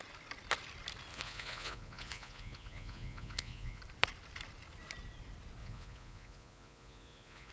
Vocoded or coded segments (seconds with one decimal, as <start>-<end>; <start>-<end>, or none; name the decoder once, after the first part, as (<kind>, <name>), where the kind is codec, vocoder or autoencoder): 1.1-3.8 (vocoder, Vocos); 5.6-7.5